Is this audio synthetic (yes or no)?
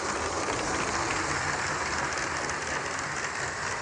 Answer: no